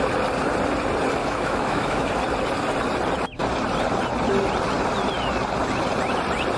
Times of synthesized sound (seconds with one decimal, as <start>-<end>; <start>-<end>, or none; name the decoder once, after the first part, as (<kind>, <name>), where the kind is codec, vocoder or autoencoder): 1.2-2.1 (autoencoder, DAC-VAE)